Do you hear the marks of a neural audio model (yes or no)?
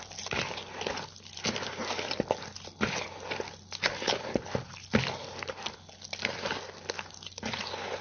no